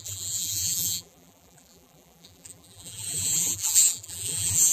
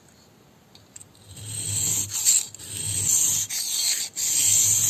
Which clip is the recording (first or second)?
second